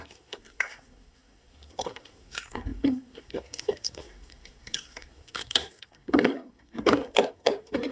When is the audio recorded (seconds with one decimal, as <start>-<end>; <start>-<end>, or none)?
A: none